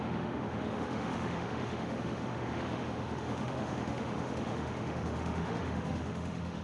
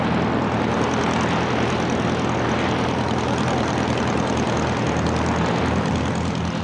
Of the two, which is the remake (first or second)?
first